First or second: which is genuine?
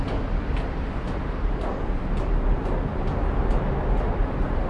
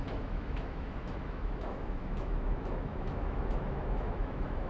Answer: first